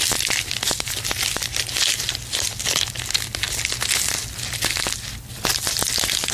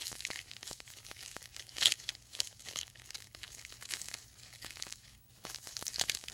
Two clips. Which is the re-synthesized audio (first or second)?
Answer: second